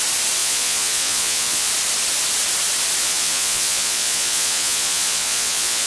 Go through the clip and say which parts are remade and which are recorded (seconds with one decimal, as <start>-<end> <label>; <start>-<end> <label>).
0.0-0.4 recorded; 0.4-1.7 remade; 1.7-3.0 recorded; 3.0-5.9 remade